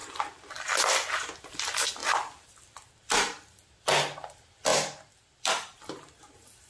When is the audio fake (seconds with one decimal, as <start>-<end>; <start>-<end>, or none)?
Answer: 0.0-1.4; 2.0-2.9; 4.7-6.2